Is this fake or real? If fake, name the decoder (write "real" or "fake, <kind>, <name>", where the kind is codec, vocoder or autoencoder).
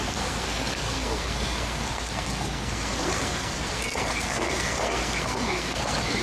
fake, codec, SNAC